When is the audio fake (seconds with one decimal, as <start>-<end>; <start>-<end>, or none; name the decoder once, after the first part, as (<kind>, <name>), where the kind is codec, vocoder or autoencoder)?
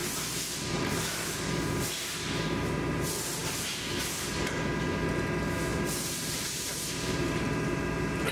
5.7-8.3 (vocoder, BigVGAN v2)